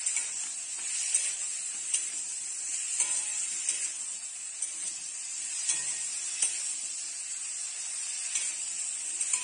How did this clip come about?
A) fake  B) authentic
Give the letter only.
B